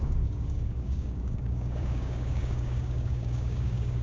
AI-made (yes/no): yes